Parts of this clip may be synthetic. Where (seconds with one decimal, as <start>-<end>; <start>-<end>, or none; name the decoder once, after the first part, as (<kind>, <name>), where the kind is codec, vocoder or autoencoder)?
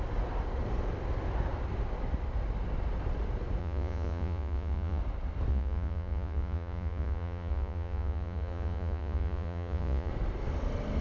3.6-5.0 (vocoder, Vocos); 5.5-10.1